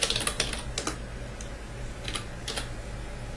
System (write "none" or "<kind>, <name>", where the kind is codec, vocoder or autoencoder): none